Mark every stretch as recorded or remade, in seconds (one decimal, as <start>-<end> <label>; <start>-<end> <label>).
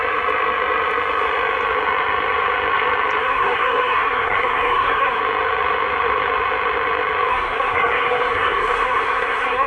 0.0-3.2 recorded; 3.2-5.2 remade; 5.2-7.3 recorded; 7.3-9.7 remade